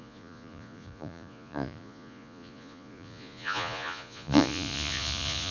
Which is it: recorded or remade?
remade